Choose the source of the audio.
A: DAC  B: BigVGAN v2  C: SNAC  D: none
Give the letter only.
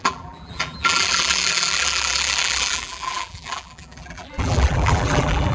B